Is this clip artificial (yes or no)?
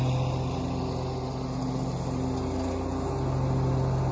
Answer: no